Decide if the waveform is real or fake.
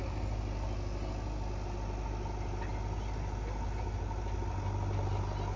real